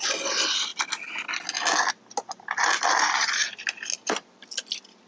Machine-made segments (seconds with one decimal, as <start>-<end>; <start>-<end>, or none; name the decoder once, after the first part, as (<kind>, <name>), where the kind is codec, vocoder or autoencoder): none